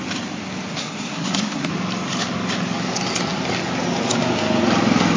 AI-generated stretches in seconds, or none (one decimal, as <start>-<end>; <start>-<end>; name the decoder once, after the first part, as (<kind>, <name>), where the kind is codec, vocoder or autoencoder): 0.8-1.7 (codec, SNAC)